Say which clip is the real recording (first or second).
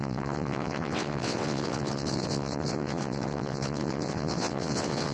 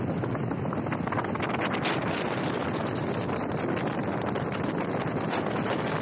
second